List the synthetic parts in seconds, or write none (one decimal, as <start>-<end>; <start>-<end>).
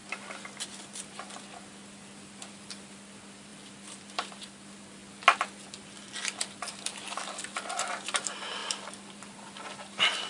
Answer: 0.0-5.0; 6.4-10.3